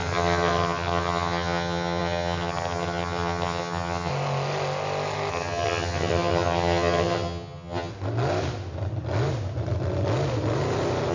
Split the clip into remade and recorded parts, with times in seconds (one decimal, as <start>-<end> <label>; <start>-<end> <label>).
0.0-4.1 remade; 4.1-5.3 recorded; 5.3-7.9 remade; 7.9-11.1 recorded